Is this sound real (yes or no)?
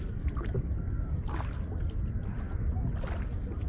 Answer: yes